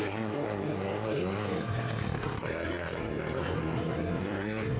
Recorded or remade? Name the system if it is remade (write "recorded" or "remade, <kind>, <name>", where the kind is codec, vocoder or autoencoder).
remade, codec, SNAC